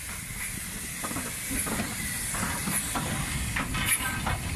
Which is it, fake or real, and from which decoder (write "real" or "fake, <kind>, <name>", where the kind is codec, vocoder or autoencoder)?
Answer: real